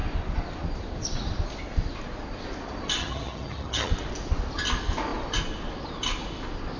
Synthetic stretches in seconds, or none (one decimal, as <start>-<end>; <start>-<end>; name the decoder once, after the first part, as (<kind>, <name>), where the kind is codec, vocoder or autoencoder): 3.0-3.9 (vocoder, HiFi-GAN)